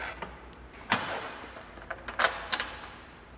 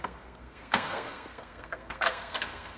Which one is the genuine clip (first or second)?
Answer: first